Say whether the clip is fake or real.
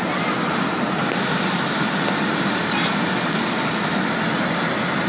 real